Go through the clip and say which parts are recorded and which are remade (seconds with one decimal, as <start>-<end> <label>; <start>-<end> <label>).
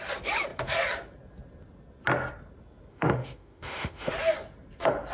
0.0-2.9 recorded; 2.9-4.1 remade; 4.1-5.1 recorded